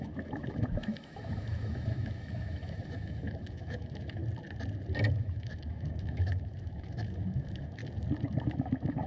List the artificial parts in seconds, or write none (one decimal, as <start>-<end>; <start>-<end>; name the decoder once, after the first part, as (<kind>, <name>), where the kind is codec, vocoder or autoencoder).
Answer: 0.0-4.2 (autoencoder, DAC-VAE); 5.1-7.8; 8.4-9.1